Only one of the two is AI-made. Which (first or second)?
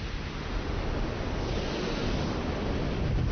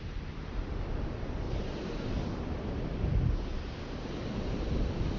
second